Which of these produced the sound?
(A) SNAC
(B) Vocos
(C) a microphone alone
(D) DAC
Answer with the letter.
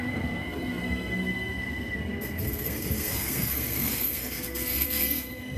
A